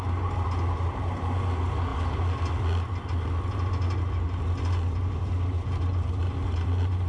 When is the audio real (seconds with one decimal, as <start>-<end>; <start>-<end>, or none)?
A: 0.0-7.1